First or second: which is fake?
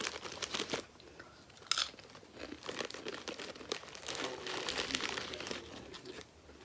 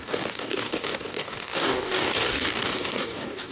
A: second